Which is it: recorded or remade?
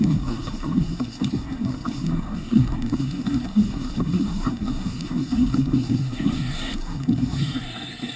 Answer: remade